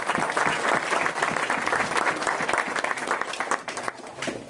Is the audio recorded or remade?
recorded